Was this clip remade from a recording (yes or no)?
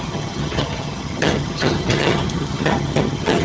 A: yes